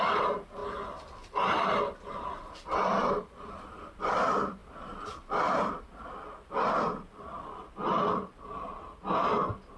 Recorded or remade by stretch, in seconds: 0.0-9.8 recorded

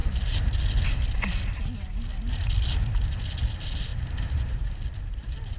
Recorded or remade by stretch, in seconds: 0.0-5.6 recorded

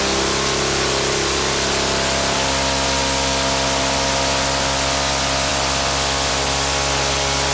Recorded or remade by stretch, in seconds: 0.0-7.5 recorded

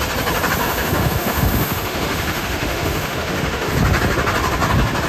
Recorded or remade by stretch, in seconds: 0.0-0.6 recorded; 0.6-3.7 remade; 3.7-5.1 recorded

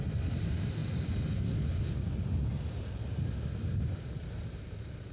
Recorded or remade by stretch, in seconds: 0.0-0.8 remade; 0.8-3.9 recorded; 3.9-5.1 remade

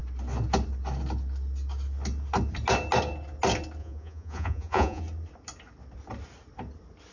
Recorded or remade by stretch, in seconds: 0.0-3.8 recorded; 3.8-5.0 remade; 5.0-7.1 recorded